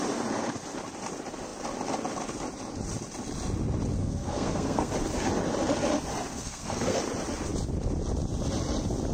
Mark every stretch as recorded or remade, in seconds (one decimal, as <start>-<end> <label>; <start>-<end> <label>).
0.0-4.0 recorded; 4.0-4.9 remade; 4.9-6.3 recorded; 6.3-7.0 remade; 7.0-9.1 recorded